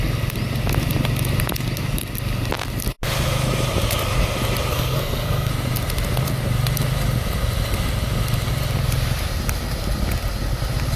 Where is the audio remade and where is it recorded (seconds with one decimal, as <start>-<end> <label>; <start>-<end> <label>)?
0.0-4.7 recorded; 4.7-5.5 remade; 5.5-11.0 recorded